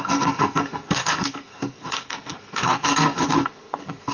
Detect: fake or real fake